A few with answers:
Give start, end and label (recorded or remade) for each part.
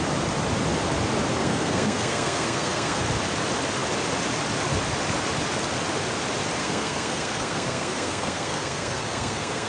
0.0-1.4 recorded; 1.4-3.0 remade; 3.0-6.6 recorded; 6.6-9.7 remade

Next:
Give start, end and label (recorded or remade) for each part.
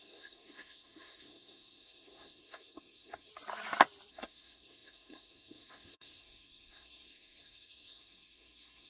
0.0-3.3 remade; 3.3-4.1 recorded; 4.1-8.9 remade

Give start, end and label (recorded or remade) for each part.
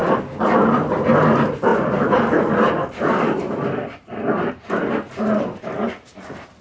0.0-6.6 recorded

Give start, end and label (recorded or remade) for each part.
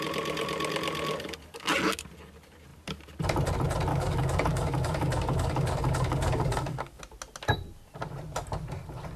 0.0-3.9 recorded; 3.9-7.0 remade; 7.0-9.2 recorded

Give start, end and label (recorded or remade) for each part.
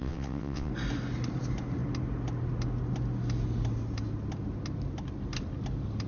0.0-0.7 remade; 0.7-6.1 recorded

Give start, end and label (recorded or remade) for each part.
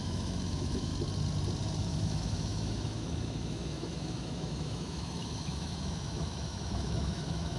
0.0-0.9 remade; 0.9-1.8 recorded; 1.8-7.6 remade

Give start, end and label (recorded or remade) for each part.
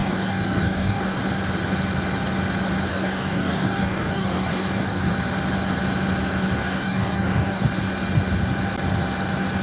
0.0-1.2 remade; 1.2-2.9 recorded; 2.9-5.1 remade; 5.1-6.6 recorded; 6.6-7.6 remade; 7.6-9.6 recorded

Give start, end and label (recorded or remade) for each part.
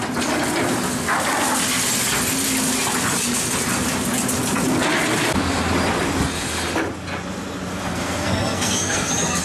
0.0-7.7 recorded; 7.7-9.4 remade